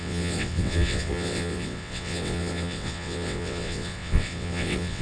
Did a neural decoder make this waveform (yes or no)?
yes